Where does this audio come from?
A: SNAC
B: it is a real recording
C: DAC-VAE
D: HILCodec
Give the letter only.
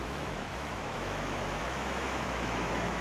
C